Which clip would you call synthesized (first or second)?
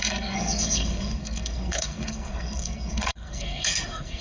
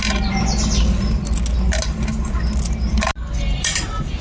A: first